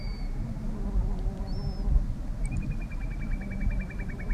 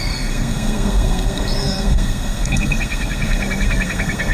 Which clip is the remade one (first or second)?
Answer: second